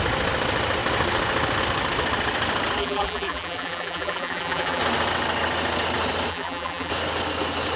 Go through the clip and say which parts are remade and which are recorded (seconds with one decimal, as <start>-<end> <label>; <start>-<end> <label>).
0.0-2.8 recorded; 2.8-4.8 remade; 4.8-6.3 recorded; 6.3-6.9 remade; 6.9-7.8 recorded